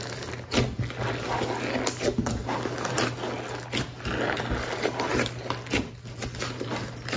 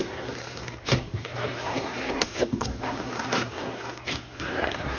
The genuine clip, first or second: first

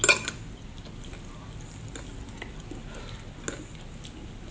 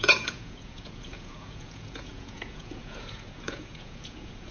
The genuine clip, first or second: first